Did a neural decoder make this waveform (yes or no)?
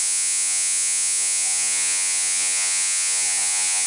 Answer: yes